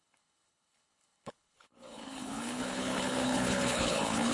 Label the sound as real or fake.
fake